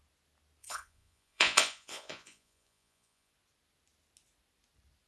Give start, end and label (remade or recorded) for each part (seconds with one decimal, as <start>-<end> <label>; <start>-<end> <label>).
0.0-0.6 recorded; 0.6-3.3 remade; 3.3-5.1 recorded